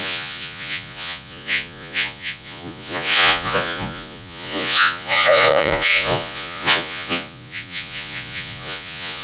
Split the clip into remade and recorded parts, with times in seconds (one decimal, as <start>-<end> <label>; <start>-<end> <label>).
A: 0.0-9.2 remade